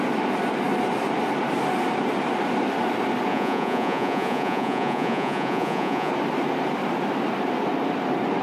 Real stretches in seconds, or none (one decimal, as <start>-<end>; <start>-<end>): 0.0-3.3; 6.1-8.4